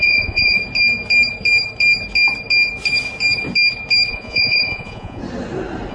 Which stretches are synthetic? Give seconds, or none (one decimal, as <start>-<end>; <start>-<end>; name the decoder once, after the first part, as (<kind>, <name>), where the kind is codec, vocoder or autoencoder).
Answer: 0.0-0.6 (vocoder, Vocos); 4.1-5.2